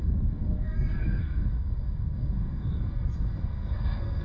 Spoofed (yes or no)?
yes